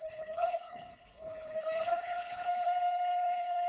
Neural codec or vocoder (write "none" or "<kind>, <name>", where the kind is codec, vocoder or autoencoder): codec, HILCodec